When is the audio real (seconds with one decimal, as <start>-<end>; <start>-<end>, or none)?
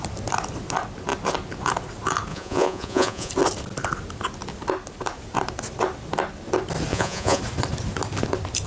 0.0-2.3; 3.3-6.9; 7.4-8.7